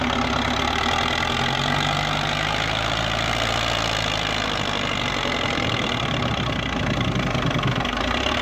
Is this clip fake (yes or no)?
no